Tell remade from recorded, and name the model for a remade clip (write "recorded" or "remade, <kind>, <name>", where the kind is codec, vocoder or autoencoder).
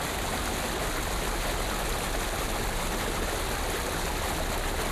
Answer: recorded